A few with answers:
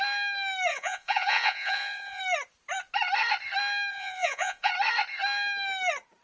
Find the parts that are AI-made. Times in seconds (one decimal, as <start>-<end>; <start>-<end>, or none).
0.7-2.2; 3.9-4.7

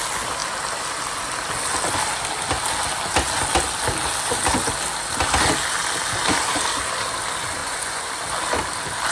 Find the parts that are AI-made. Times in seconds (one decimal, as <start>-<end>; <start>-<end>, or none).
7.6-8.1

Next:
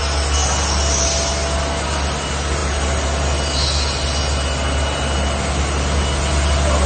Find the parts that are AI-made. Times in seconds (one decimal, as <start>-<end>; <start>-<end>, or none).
none